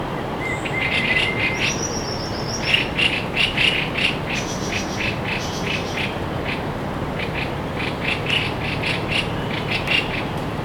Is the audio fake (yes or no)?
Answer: no